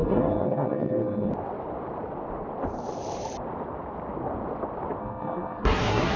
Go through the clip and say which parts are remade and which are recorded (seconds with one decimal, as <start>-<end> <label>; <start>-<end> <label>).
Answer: 0.0-1.3 remade; 1.3-5.0 recorded; 5.0-6.2 remade